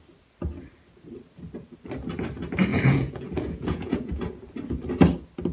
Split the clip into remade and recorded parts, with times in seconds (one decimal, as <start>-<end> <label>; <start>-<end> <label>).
0.0-2.7 recorded; 2.7-4.2 remade; 4.2-5.5 recorded